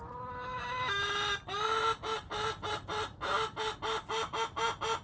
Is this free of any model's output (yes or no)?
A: yes